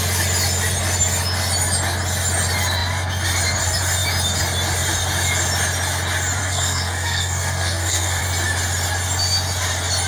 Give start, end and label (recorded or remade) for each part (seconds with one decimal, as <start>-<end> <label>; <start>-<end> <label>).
0.0-6.4 recorded; 6.4-8.2 remade; 8.2-10.1 recorded